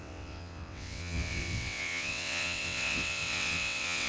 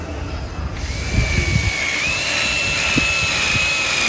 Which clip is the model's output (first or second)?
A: first